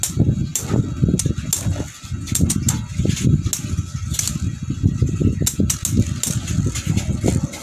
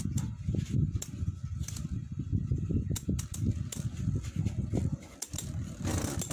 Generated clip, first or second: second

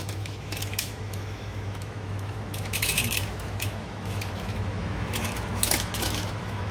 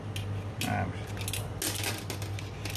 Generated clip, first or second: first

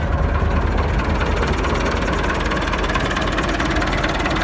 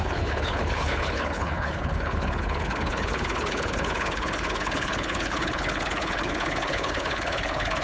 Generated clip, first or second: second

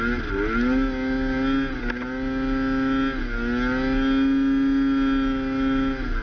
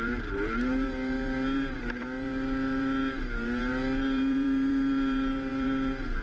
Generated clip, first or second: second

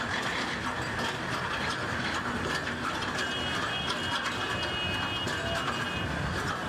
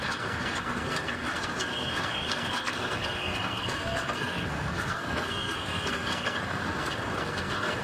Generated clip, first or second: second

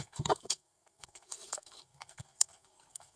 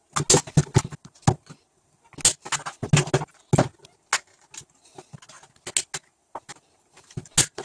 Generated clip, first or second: first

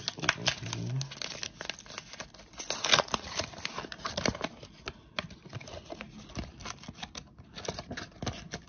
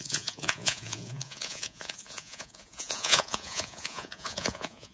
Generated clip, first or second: second